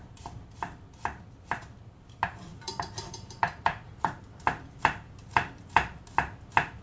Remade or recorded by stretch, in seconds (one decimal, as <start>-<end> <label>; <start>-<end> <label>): 0.0-2.5 recorded; 2.5-6.0 remade; 6.0-6.8 recorded